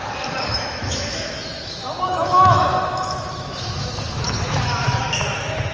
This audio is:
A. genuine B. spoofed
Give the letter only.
B